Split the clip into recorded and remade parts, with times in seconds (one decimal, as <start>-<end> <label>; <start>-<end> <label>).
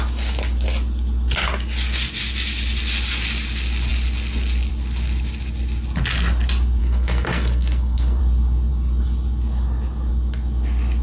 0.0-6.8 recorded; 6.8-8.2 remade; 8.2-11.0 recorded